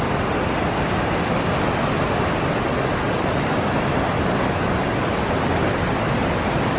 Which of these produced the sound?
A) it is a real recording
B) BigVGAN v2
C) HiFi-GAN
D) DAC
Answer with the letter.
A